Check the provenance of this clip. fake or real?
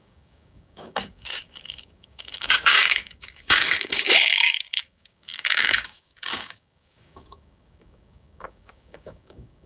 fake